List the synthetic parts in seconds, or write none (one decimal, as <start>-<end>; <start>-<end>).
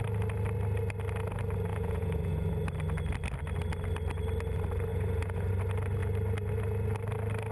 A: 1.7-2.5; 4.9-5.5